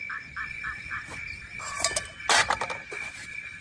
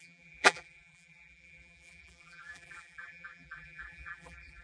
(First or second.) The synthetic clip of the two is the second